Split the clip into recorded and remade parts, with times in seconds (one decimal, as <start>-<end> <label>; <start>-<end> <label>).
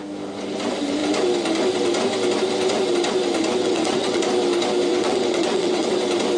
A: 0.0-3.6 recorded; 3.6-4.2 remade; 4.2-4.9 recorded; 4.9-6.0 remade; 6.0-6.4 recorded